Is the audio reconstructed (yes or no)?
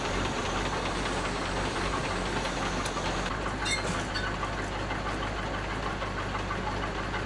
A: no